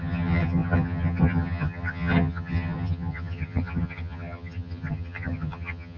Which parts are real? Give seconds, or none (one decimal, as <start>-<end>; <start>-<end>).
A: none